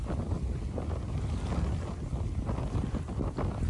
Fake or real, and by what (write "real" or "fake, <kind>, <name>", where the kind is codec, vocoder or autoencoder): real